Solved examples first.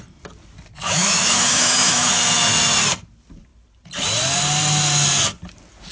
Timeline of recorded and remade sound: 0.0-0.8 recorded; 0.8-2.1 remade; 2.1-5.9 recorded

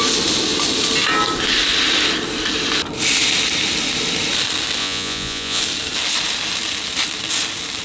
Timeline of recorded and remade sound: 0.0-4.8 recorded; 4.8-5.6 remade; 5.6-7.8 recorded

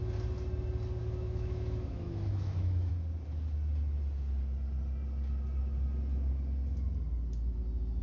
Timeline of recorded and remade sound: 0.0-1.0 recorded; 1.0-2.9 remade; 2.9-8.0 recorded

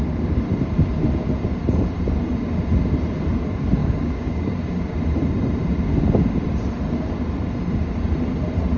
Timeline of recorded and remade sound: 0.0-3.8 recorded; 3.8-4.8 remade; 4.8-8.8 recorded

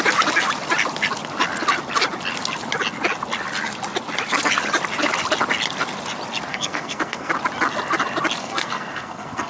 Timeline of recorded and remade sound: 0.0-6.5 recorded; 6.5-7.3 remade; 7.3-8.4 recorded; 8.4-9.5 remade

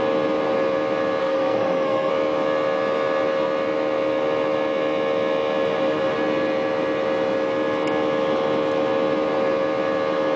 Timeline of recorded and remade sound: 0.0-1.2 recorded; 1.2-2.1 remade; 2.1-10.4 recorded